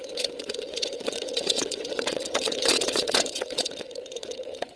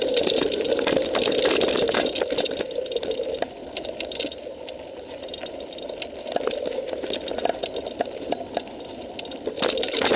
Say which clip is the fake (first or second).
first